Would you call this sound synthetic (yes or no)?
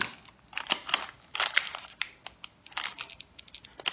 no